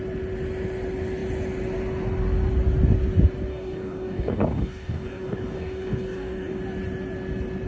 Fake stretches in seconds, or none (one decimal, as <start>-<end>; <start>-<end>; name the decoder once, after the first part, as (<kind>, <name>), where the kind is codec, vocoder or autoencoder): 3.5-6.6 (codec, DAC)